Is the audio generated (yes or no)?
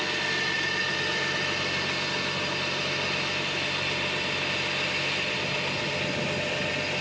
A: no